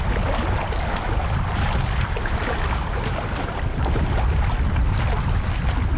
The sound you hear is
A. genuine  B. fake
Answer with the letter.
A